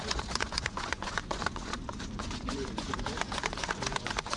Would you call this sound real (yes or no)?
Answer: no